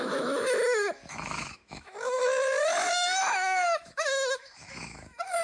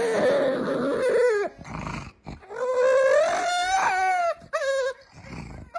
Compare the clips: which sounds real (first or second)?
second